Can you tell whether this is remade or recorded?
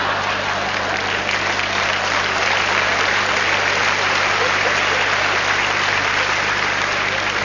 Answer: recorded